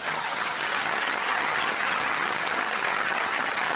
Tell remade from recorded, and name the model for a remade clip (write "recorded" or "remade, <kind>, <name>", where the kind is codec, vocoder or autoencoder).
remade, vocoder, HiFi-GAN